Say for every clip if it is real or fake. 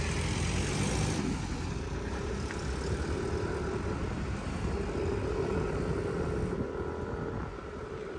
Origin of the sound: real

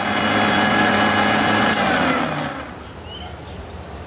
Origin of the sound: real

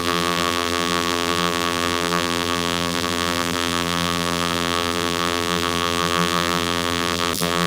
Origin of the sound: fake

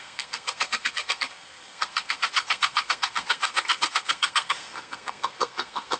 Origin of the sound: fake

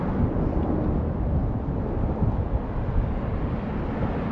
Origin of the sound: real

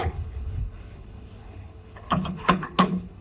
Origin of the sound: fake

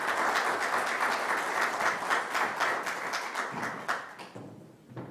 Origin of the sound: real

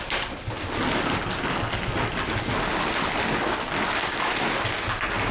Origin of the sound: real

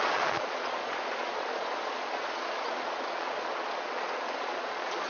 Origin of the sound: fake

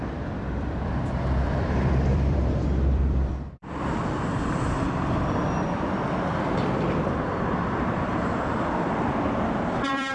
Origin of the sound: fake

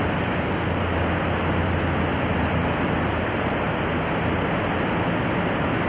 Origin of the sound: fake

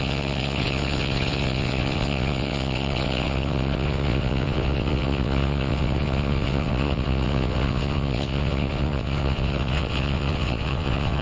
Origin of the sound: fake